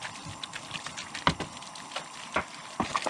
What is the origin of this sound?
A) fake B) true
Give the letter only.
B